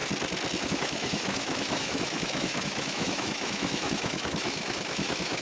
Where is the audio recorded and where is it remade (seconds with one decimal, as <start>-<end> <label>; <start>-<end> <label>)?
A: 0.0-0.6 recorded; 0.6-5.4 remade